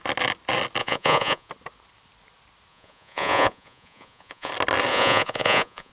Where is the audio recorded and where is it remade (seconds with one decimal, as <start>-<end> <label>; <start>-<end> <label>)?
0.0-0.8 recorded; 0.8-1.5 remade; 1.5-2.7 recorded; 2.7-4.5 remade; 4.5-4.9 recorded; 4.9-5.9 remade